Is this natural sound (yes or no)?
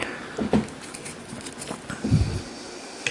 yes